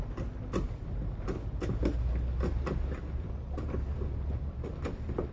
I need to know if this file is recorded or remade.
recorded